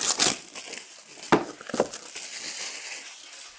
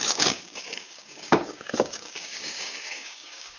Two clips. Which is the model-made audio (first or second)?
second